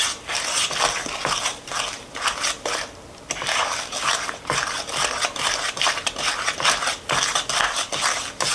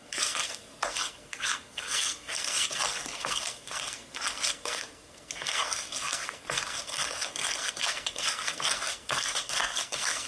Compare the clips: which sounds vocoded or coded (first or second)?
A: second